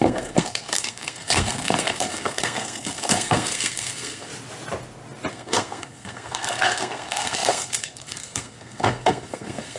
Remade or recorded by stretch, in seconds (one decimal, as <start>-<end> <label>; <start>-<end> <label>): 0.0-4.3 remade; 4.3-5.3 recorded; 5.3-9.8 remade